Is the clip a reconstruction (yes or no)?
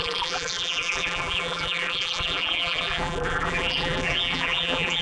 yes